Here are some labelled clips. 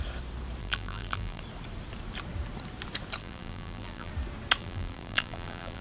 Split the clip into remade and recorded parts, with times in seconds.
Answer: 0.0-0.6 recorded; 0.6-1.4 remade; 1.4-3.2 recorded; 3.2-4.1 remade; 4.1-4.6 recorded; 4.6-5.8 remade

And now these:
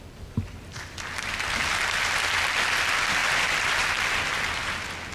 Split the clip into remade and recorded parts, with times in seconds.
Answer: 0.0-3.2 recorded; 3.2-3.8 remade; 3.8-5.1 recorded